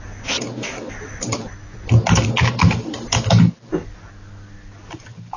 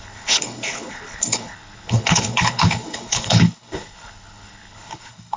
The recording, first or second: first